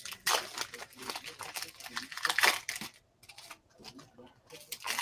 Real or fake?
real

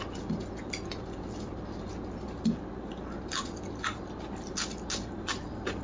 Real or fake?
real